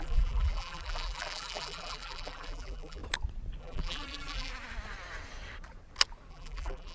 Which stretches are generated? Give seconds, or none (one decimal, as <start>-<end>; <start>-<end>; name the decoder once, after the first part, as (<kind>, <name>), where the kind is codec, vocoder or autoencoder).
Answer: 0.0-3.0 (vocoder, BigVGAN v2); 3.6-4.5; 6.3-6.9